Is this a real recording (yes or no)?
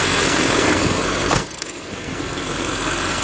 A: no